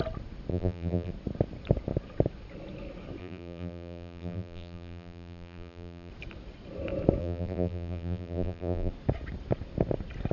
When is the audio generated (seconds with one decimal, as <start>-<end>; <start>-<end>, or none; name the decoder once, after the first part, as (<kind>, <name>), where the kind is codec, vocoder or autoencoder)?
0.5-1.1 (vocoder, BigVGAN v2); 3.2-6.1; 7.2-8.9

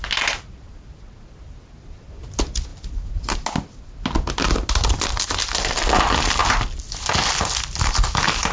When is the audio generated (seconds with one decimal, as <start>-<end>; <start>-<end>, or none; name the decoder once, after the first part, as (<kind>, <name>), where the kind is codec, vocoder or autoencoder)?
none

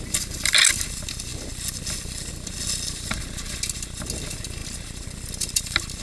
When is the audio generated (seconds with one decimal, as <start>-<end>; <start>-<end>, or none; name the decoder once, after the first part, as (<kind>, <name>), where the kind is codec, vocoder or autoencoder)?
none